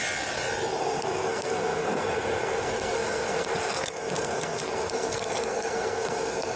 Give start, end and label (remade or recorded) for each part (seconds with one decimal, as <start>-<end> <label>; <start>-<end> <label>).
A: 0.0-0.8 recorded; 0.8-6.6 remade